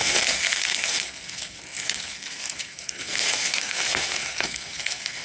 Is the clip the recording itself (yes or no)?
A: no